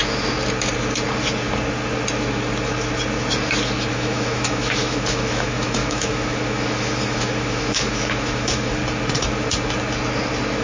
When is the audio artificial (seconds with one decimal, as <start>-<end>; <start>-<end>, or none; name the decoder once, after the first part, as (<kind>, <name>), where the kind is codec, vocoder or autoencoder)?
3.9-8.8 (autoencoder, DAC-VAE)